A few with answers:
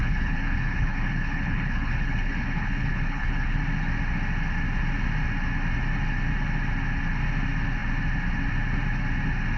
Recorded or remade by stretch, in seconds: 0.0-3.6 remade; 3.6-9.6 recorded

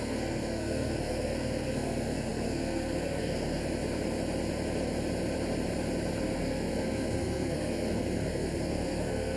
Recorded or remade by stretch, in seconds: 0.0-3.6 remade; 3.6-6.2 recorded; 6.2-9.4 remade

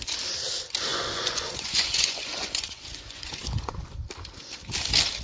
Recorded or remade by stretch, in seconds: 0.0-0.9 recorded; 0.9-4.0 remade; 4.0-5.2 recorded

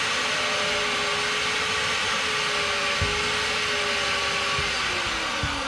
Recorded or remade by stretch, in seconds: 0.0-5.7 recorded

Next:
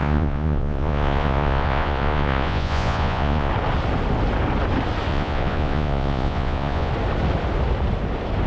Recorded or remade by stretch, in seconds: 0.0-3.5 remade; 3.5-5.1 recorded; 5.1-6.9 remade; 6.9-8.5 recorded

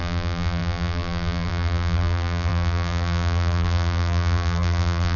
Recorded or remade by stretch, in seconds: 0.0-5.2 remade

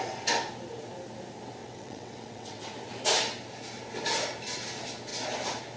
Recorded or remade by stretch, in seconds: 0.0-1.6 recorded; 1.6-2.7 remade; 2.7-5.8 recorded

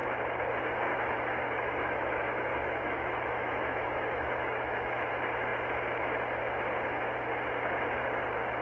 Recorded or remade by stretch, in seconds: 0.0-0.9 recorded; 0.9-5.1 remade; 5.1-8.6 recorded